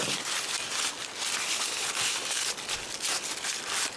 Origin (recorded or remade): recorded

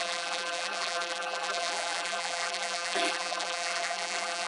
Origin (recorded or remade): remade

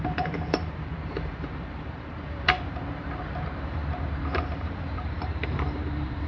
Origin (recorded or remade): remade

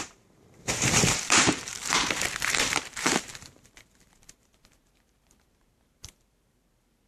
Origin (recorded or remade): remade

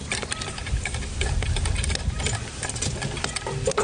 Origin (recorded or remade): recorded